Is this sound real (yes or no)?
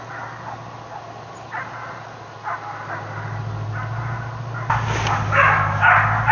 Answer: yes